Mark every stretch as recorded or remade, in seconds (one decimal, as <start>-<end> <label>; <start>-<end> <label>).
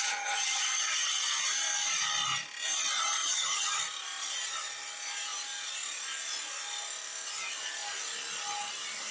0.0-1.1 remade; 1.1-3.2 recorded; 3.2-3.8 remade; 3.8-9.1 recorded